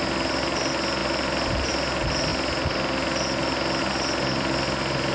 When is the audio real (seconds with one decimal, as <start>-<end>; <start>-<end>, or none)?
0.0-5.1